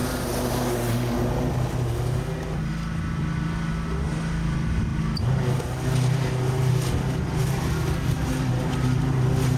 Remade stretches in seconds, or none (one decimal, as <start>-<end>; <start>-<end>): none